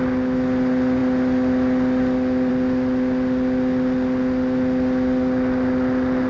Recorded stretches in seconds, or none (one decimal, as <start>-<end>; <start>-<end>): 0.0-6.3